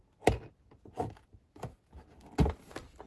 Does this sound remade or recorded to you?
recorded